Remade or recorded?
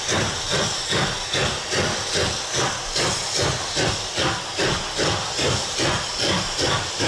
recorded